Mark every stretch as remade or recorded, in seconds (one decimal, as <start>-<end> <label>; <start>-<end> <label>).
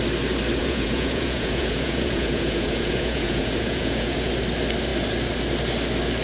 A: 0.0-0.6 recorded; 0.6-4.3 remade; 4.3-6.2 recorded